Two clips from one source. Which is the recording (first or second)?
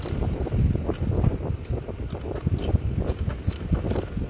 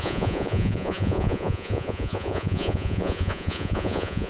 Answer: first